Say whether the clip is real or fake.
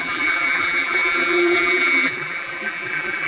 fake